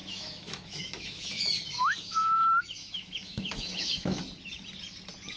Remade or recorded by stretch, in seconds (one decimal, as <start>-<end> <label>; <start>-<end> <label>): 0.0-1.4 remade; 1.4-2.1 recorded; 2.1-4.2 remade; 4.2-5.4 recorded